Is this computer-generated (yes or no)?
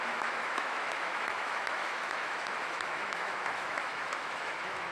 yes